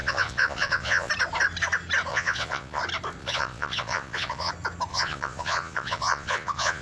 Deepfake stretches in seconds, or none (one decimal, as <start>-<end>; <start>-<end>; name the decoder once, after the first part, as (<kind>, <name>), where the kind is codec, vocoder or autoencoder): 0.0-1.1 (vocoder, Vocos); 2.1-2.8; 3.2-4.5; 4.9-6.8